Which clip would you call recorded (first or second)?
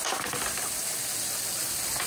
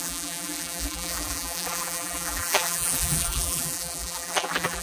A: first